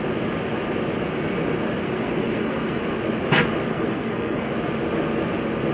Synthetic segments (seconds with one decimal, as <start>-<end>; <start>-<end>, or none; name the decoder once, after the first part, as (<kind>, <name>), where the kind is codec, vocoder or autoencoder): 1.8-2.8 (codec, SNAC); 3.7-4.5